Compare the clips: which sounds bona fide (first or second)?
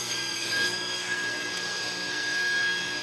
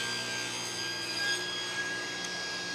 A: second